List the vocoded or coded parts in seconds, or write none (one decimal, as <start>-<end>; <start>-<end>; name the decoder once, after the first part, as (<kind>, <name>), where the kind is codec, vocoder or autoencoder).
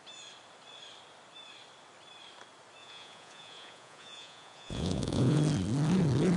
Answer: 2.8-5.4 (vocoder, Vocos)